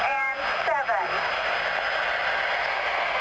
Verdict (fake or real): real